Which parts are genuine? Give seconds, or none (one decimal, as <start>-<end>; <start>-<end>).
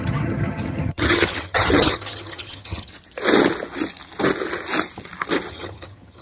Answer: 2.9-5.5